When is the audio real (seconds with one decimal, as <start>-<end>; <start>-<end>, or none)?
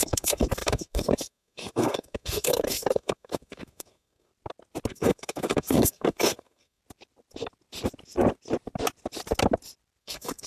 4.3-4.9; 6.8-10.0